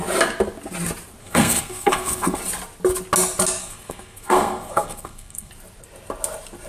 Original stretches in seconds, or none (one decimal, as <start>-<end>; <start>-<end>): 0.0-1.2; 2.4-3.6; 5.5-6.7

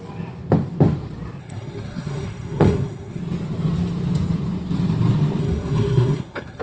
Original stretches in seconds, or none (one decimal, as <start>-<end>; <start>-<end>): 0.0-1.4; 3.2-5.4

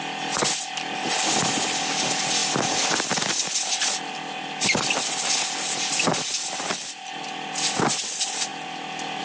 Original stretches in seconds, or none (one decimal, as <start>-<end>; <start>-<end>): 0.0-9.2

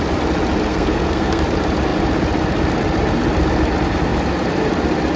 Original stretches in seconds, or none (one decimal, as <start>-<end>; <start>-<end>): 0.0-0.7; 1.4-5.2

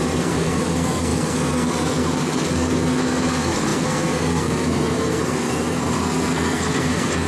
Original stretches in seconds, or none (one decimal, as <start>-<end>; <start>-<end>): none

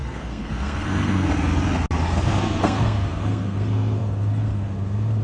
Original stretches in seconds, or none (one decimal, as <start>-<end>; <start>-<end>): 1.3-2.1